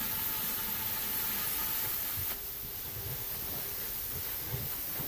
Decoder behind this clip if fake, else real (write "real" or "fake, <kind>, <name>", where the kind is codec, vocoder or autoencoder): real